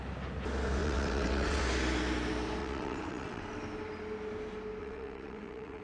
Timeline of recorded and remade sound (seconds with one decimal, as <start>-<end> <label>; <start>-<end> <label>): 0.0-0.8 recorded; 0.8-1.6 remade; 1.6-2.6 recorded; 2.6-3.4 remade; 3.4-4.8 recorded; 4.8-5.8 remade